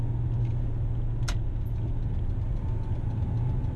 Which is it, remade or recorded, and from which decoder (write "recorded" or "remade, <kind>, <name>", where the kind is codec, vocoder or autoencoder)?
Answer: recorded